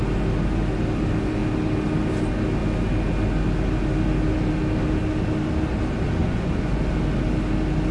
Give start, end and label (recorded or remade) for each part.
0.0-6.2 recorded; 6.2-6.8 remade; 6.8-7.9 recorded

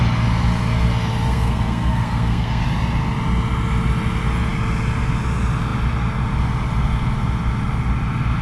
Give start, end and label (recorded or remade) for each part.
0.0-1.3 recorded; 1.3-2.6 remade; 2.6-8.4 recorded

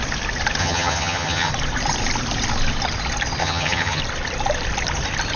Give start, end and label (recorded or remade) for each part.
0.0-0.6 recorded; 0.6-1.5 remade; 1.5-3.4 recorded; 3.4-4.0 remade; 4.0-5.4 recorded

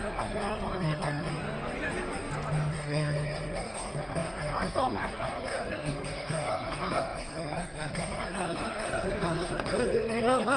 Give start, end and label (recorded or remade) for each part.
0.0-1.3 remade; 1.3-2.7 recorded; 2.7-10.6 remade

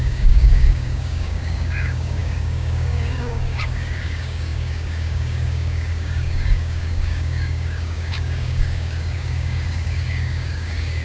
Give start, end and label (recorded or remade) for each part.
0.0-11.0 remade

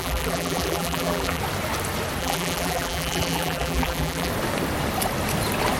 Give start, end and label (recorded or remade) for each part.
0.0-1.4 remade; 1.4-2.2 recorded; 2.2-4.3 remade; 4.3-5.8 recorded

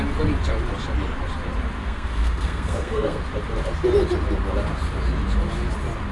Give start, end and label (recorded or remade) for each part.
0.0-1.8 recorded; 1.8-3.2 remade; 3.2-6.1 recorded

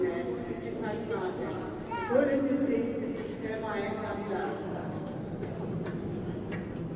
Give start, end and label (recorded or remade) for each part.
0.0-4.4 recorded; 4.4-5.5 remade; 5.5-7.0 recorded